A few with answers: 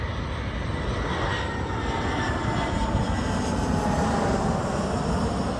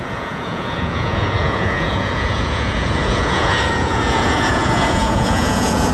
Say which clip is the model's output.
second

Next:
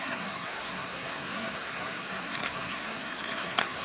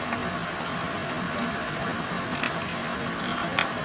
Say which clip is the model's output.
first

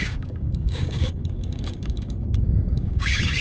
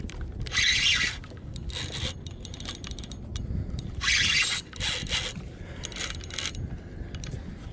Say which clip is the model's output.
first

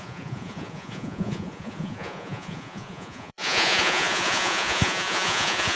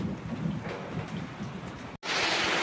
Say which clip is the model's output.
first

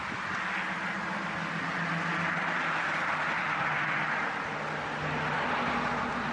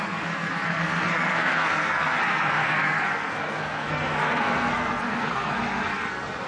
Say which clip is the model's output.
second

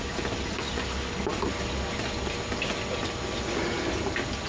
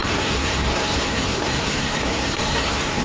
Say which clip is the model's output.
second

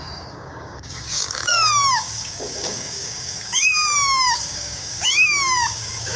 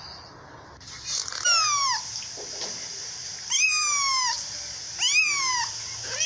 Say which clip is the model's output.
first